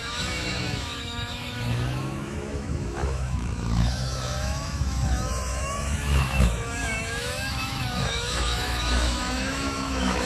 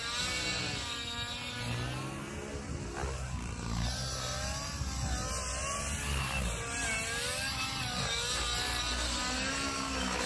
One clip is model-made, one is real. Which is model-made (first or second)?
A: first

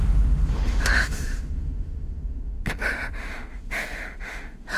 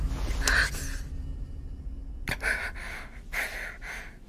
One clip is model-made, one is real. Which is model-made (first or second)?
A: first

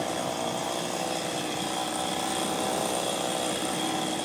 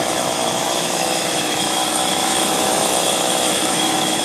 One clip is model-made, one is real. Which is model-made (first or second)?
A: second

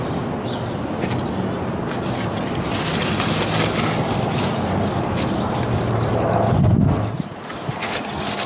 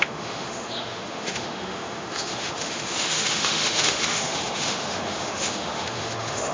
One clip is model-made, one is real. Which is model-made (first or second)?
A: second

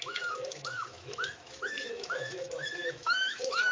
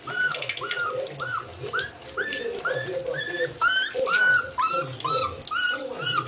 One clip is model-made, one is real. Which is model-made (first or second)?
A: first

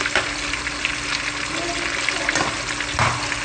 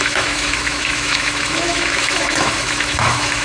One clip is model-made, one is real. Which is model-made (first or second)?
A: second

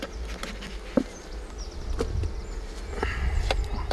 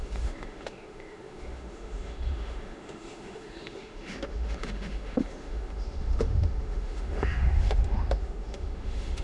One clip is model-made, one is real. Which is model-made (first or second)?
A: second